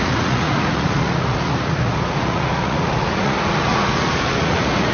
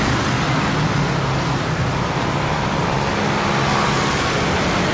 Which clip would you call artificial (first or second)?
first